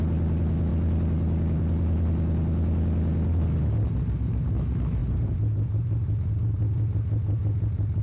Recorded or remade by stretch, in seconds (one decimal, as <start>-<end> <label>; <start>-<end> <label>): 0.0-5.0 recorded; 5.0-8.0 remade